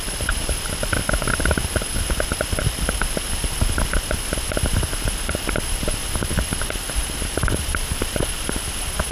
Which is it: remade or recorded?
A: remade